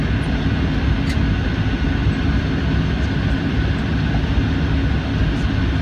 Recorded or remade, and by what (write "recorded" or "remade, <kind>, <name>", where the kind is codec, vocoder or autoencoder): recorded